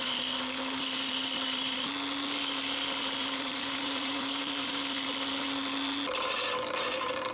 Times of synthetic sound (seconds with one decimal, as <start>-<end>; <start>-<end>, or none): 3.2-4.7